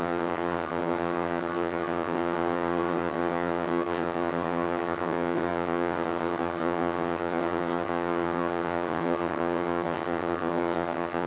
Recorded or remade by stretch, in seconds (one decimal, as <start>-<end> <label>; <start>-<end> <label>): 0.0-11.3 remade